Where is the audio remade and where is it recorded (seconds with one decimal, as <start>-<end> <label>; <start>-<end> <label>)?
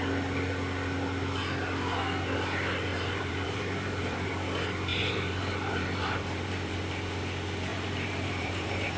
0.0-2.9 recorded; 2.9-4.3 remade; 4.3-4.9 recorded; 4.9-6.7 remade; 6.7-7.7 recorded; 7.7-9.0 remade